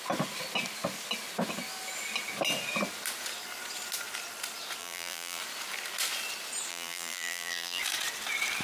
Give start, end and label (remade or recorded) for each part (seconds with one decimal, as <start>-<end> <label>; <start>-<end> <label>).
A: 0.0-4.8 recorded; 4.8-5.4 remade; 5.4-6.7 recorded; 6.7-7.8 remade; 7.8-8.6 recorded